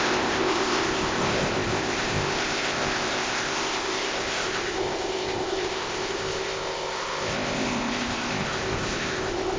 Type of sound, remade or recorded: remade